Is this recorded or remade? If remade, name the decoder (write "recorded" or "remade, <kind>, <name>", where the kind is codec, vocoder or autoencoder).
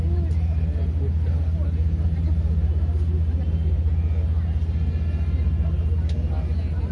recorded